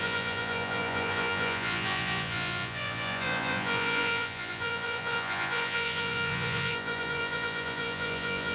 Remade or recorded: remade